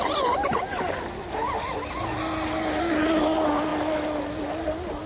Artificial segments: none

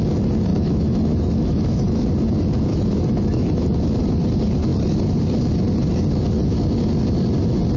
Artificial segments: 0.5-2.0; 2.7-3.8

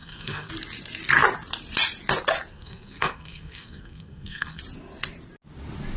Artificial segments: 0.0-0.5; 2.5-4.6